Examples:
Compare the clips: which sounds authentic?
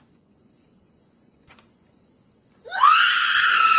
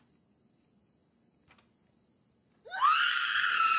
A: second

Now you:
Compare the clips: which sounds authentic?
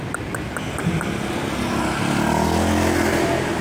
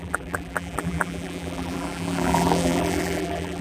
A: first